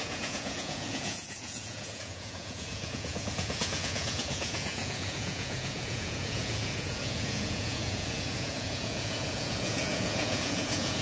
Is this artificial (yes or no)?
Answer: yes